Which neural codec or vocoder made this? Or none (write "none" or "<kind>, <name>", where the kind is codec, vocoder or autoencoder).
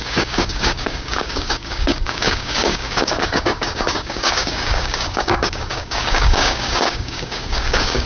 codec, DAC